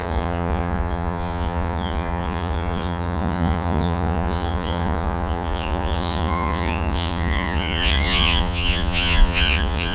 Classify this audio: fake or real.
fake